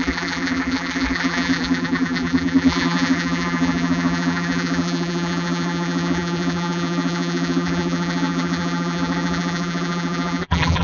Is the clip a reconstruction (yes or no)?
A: yes